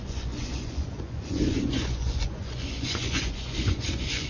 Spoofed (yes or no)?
yes